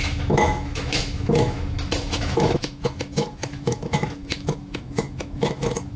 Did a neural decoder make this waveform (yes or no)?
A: yes